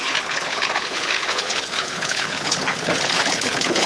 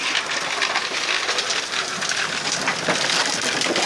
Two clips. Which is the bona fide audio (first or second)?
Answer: second